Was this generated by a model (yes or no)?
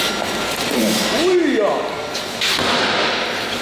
no